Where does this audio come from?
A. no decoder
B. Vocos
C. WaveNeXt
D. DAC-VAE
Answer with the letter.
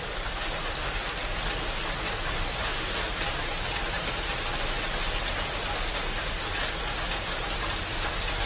A